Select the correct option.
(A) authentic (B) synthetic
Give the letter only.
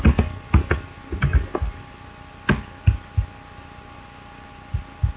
A